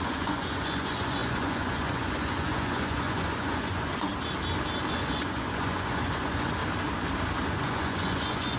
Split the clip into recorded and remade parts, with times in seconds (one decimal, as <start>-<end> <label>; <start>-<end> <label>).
0.0-4.1 remade; 4.1-4.9 recorded; 4.9-6.6 remade; 6.6-7.5 recorded; 7.5-8.6 remade